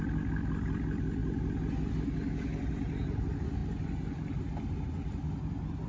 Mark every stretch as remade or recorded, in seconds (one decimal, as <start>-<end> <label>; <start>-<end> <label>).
0.0-5.9 recorded